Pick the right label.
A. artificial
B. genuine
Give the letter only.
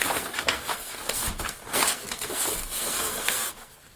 A